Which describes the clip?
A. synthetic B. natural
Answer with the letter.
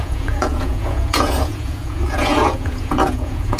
A